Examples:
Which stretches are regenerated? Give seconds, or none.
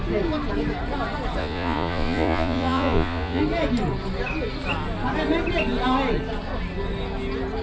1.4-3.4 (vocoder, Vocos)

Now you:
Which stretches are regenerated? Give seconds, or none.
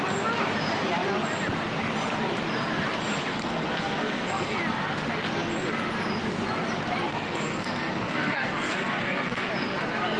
3.3-4.6 (codec, SNAC); 7.1-9.5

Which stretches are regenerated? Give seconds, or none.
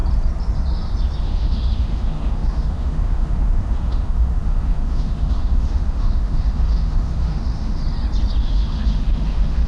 1.2-7.8 (autoencoder, DAC-VAE); 8.4-9.7